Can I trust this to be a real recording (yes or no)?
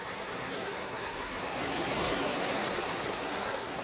no